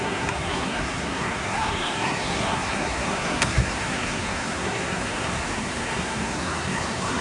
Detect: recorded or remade remade